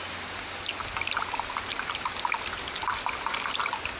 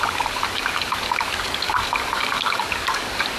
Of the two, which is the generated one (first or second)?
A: second